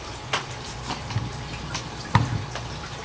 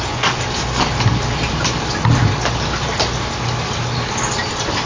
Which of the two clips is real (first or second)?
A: second